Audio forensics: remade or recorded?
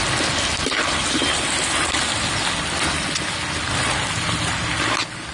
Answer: recorded